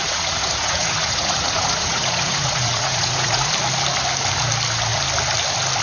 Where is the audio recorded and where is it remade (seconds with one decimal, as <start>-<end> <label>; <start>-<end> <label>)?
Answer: 0.0-3.5 remade; 3.5-5.8 recorded